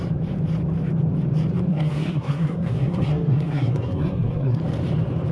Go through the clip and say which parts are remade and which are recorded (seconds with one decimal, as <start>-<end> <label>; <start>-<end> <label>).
0.0-1.7 recorded; 1.7-4.6 remade; 4.6-5.3 recorded